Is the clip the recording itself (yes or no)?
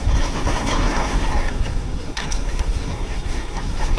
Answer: no